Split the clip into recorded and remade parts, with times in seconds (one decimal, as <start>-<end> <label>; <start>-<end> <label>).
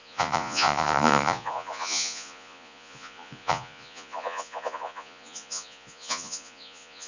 0.0-7.1 remade